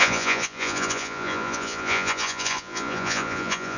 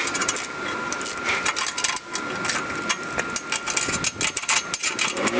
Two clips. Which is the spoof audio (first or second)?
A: first